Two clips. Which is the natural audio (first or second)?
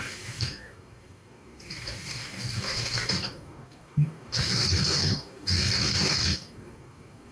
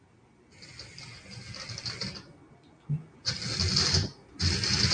second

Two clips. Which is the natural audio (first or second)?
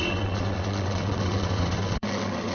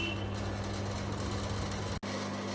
second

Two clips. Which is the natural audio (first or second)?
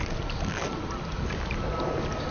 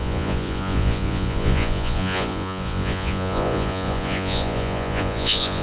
first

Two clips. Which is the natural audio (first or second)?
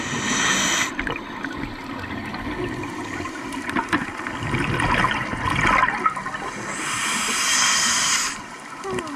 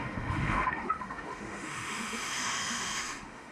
first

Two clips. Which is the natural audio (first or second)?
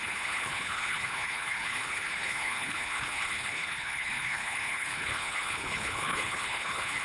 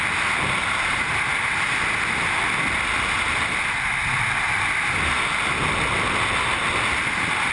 second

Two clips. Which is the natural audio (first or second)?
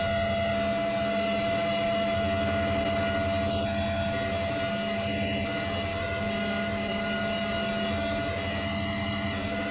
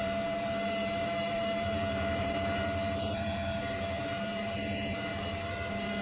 first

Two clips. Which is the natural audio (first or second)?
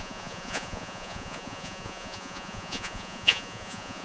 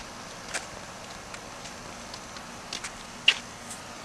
second